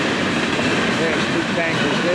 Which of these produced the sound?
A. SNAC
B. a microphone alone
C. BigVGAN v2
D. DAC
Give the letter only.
B